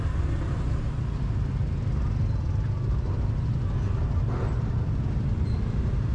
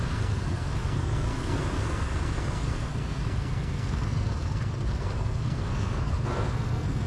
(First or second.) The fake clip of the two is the second